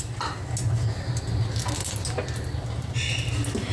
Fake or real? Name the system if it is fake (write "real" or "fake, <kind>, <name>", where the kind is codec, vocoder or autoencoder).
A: real